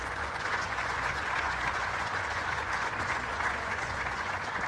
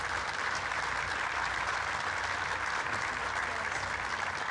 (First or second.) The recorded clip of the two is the second